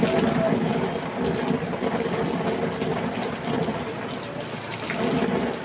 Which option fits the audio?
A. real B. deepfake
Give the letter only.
A